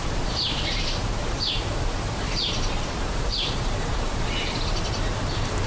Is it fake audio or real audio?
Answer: fake